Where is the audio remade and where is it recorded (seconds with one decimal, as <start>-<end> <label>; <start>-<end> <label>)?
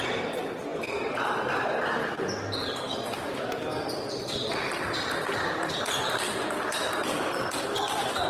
0.0-8.3 recorded